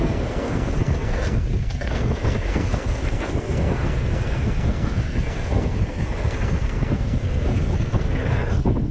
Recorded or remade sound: remade